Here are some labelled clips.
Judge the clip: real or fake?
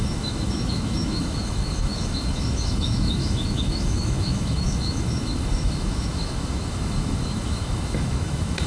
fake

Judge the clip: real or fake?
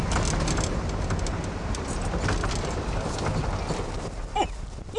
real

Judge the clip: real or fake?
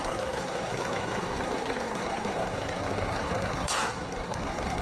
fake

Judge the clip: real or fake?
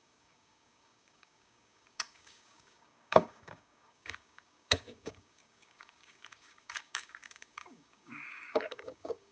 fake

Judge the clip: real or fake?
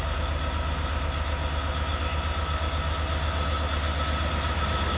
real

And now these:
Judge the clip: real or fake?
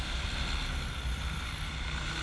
real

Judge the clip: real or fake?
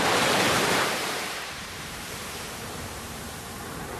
fake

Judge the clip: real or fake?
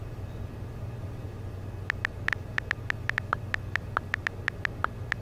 real